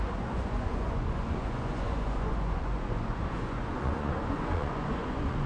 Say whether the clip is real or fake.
fake